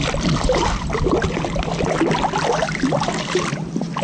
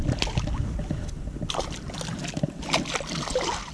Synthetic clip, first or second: first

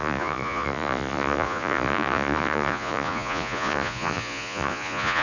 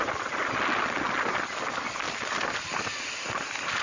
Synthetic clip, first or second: first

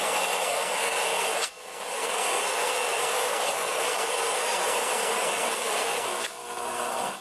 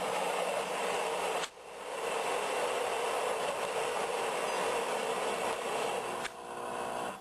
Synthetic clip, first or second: first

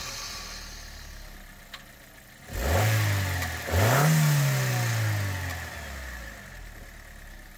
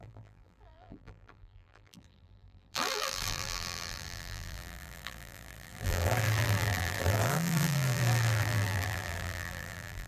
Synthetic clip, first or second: second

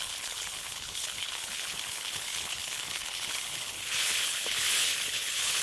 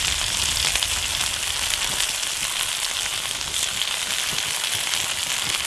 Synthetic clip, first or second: first